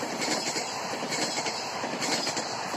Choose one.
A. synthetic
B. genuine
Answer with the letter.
B